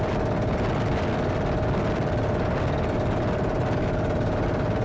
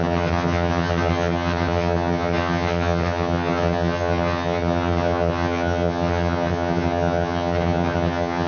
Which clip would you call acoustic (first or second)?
first